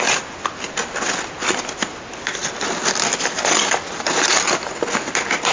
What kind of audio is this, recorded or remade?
recorded